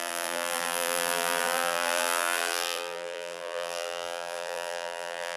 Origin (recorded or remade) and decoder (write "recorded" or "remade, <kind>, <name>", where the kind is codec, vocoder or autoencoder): remade, vocoder, BigVGAN v2